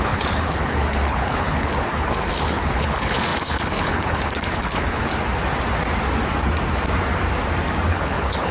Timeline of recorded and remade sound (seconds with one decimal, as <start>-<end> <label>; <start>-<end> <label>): 0.0-5.1 remade; 5.1-7.9 recorded; 7.9-8.5 remade